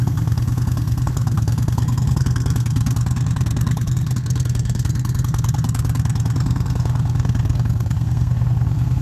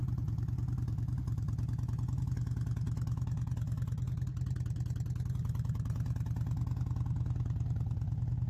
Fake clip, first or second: first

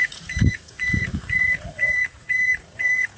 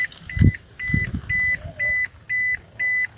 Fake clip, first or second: first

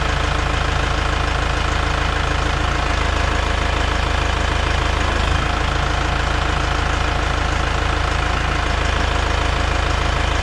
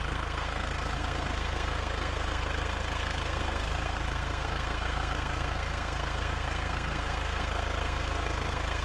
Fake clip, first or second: second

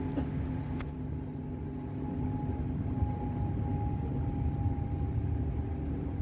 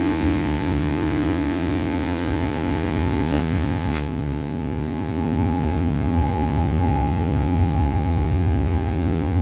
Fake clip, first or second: second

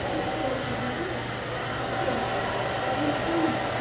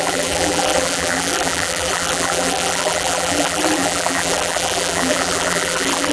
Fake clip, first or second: second